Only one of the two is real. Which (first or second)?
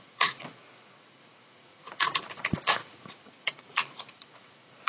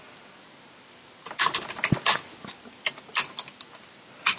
second